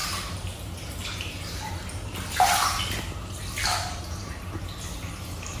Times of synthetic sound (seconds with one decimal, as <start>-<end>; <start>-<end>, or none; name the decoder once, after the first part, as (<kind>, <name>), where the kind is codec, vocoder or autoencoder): 0.0-3.4 (vocoder, BigVGAN v2); 4.2-5.1